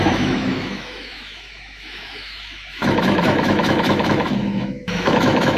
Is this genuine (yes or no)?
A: no